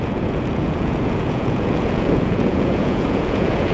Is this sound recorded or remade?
remade